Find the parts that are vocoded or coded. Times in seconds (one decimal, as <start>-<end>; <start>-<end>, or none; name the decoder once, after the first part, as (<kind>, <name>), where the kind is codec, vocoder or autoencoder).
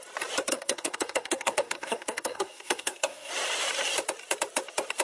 0.5-3.3 (codec, SNAC)